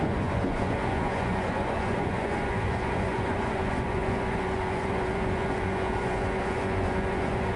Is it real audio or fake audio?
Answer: fake